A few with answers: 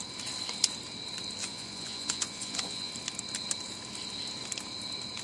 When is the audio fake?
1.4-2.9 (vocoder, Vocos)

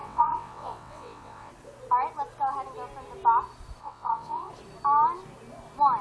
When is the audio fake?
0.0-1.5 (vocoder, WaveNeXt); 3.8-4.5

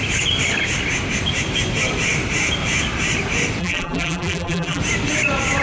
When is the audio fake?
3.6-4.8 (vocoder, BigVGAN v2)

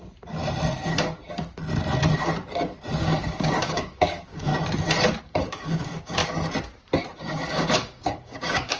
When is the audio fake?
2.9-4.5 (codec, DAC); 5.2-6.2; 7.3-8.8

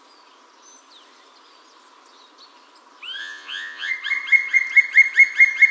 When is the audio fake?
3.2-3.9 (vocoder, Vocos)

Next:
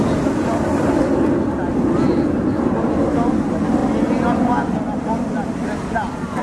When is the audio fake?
none